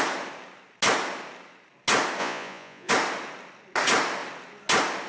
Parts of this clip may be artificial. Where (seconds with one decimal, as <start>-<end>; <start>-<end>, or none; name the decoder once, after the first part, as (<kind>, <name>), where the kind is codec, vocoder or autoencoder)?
2.2-2.9 (vocoder, Vocos)